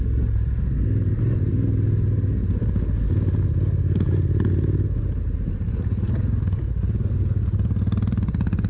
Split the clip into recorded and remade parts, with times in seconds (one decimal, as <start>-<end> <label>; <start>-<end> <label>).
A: 0.0-8.7 recorded

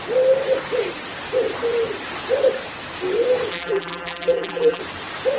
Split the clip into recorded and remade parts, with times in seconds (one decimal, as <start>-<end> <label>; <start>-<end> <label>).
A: 0.0-3.5 recorded; 3.5-4.8 remade; 4.8-5.4 recorded

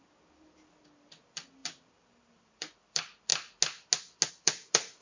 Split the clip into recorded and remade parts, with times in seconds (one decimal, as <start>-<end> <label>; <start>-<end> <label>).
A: 0.0-3.3 remade; 3.3-4.3 recorded; 4.3-5.0 remade

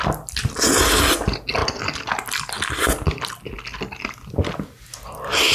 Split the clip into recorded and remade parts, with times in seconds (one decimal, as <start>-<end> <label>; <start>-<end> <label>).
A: 0.0-5.5 recorded

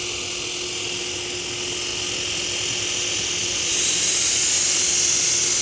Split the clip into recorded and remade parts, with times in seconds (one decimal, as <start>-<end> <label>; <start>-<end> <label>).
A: 0.0-1.9 recorded; 1.9-3.0 remade; 3.0-3.4 recorded; 3.4-4.9 remade; 4.9-5.6 recorded